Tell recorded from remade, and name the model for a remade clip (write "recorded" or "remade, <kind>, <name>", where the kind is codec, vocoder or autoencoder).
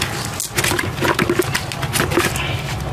recorded